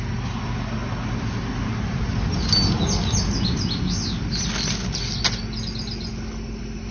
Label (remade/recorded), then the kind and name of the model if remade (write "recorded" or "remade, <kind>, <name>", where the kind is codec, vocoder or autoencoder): recorded